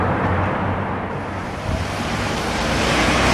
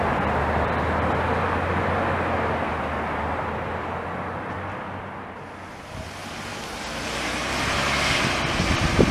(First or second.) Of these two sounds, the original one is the second